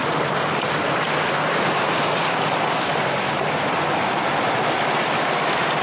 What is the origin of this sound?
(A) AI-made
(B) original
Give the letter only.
B